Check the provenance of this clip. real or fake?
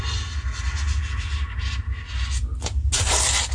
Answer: real